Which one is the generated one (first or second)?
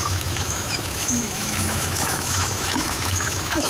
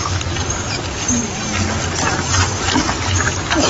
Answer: first